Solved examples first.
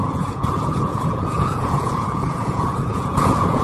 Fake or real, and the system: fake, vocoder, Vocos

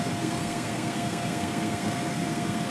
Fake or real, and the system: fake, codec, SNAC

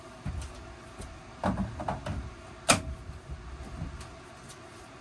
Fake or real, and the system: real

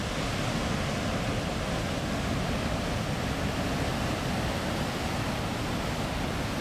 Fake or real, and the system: real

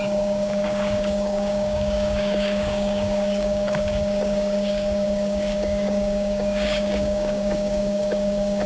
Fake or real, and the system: fake, codec, DAC